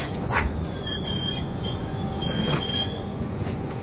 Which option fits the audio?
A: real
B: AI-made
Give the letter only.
B